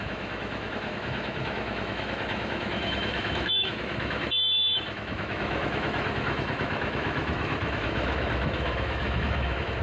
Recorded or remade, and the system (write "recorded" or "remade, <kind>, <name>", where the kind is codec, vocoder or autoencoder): remade, autoencoder, DAC-VAE